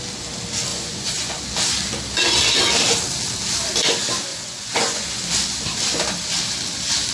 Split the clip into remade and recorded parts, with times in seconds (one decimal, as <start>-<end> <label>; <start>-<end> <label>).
0.0-0.7 recorded; 0.7-1.3 remade; 1.3-4.3 recorded; 4.3-5.2 remade; 5.2-7.1 recorded